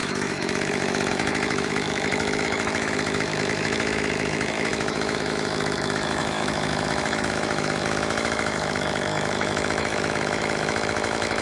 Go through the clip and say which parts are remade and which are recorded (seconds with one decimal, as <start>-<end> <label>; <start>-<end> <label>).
0.0-11.4 remade